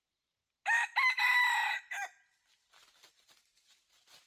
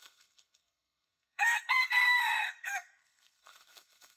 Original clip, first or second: first